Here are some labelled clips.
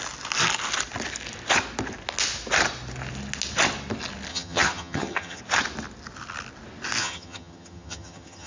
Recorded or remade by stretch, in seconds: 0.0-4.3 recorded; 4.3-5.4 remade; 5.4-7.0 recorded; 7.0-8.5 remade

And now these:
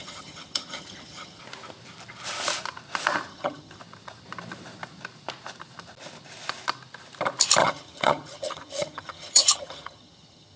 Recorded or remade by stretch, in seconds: 0.0-1.4 remade; 1.4-3.3 recorded; 3.3-3.8 remade; 3.8-7.6 recorded; 7.6-10.6 remade

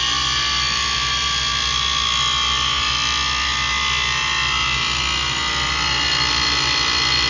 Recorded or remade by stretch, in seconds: 0.0-7.3 recorded

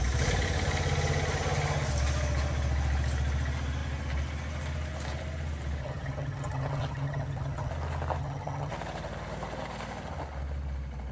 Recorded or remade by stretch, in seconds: 0.0-5.8 recorded; 5.8-7.7 remade; 7.7-8.2 recorded; 8.2-8.7 remade; 8.7-11.1 recorded

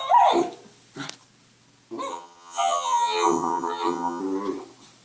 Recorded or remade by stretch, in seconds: 0.0-2.1 recorded; 2.1-4.2 remade; 4.2-5.0 recorded

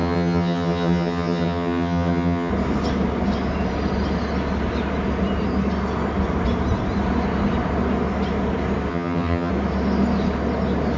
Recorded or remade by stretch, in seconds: 0.0-2.5 remade; 2.5-8.9 recorded; 8.9-9.5 remade; 9.5-11.0 recorded

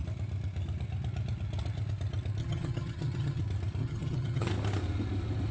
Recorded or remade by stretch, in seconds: 0.0-2.4 recorded; 2.4-3.4 remade; 3.4-3.8 recorded; 3.8-4.5 remade; 4.5-5.5 recorded